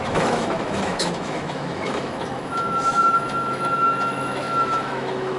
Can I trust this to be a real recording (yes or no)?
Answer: no